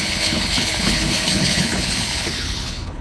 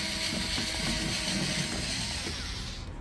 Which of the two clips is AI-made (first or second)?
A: first